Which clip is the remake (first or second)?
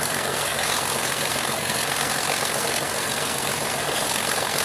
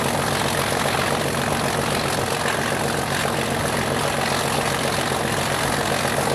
first